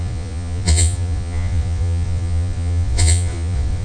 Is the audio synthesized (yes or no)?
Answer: yes